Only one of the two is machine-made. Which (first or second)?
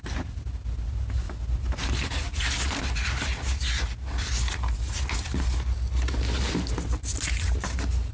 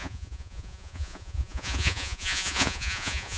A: second